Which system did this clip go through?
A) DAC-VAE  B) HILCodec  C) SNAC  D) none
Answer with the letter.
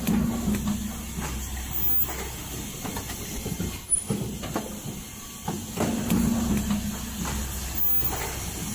D